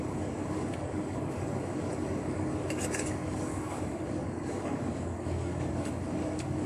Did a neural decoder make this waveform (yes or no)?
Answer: yes